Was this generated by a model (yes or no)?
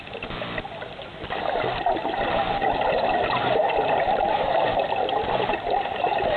yes